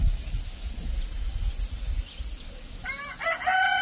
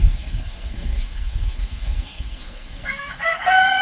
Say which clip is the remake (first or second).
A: second